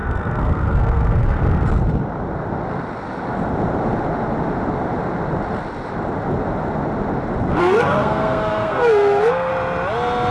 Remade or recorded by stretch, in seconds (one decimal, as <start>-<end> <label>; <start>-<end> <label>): 0.0-1.4 remade; 1.4-7.6 recorded; 7.6-9.5 remade; 9.5-10.3 recorded